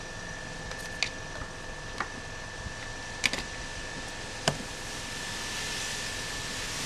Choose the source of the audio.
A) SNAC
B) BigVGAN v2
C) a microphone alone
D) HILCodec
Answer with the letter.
C